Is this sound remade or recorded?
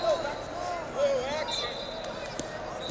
recorded